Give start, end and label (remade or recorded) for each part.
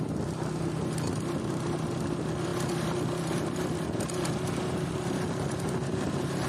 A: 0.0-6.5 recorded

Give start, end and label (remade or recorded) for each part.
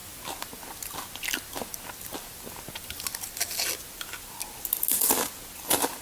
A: 0.0-6.0 recorded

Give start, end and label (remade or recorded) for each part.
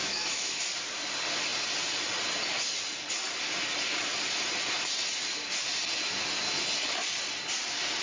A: 0.0-0.6 remade; 0.6-8.0 recorded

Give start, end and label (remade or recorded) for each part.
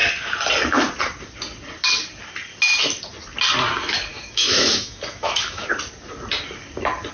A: 0.0-4.1 recorded; 4.1-5.7 remade; 5.7-7.1 recorded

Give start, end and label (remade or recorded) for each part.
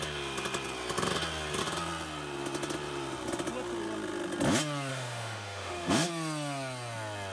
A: 0.0-4.9 recorded; 4.9-6.1 remade; 6.1-7.3 recorded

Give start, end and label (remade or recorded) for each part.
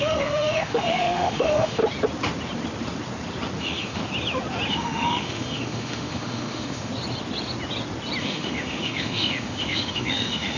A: 0.0-1.8 remade; 1.8-3.6 recorded; 3.6-4.0 remade; 4.0-4.7 recorded; 4.7-6.9 remade; 6.9-8.2 recorded; 8.2-10.6 remade